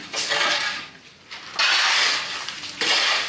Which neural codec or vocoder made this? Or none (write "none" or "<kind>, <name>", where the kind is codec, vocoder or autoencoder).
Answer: none